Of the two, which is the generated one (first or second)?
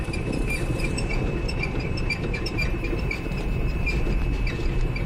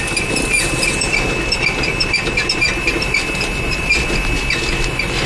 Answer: first